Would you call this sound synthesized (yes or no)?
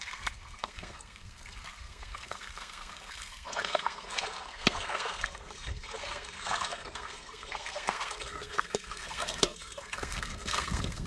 yes